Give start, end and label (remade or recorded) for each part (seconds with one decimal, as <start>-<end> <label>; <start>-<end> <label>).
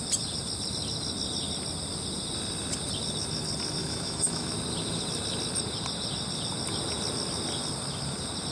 0.0-3.8 recorded; 3.8-4.5 remade; 4.5-8.5 recorded